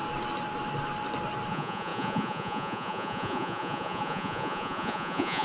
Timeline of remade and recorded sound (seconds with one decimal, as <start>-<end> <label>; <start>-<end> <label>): 0.0-1.5 recorded; 1.5-5.4 remade